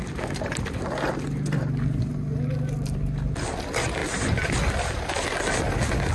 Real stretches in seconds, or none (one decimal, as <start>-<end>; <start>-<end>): 0.0-6.1